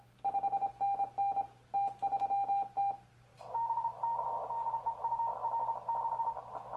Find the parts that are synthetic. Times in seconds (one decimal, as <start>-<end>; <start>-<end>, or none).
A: 3.3-4.8